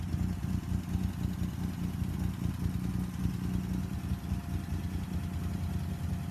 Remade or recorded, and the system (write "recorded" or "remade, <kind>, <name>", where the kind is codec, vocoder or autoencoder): recorded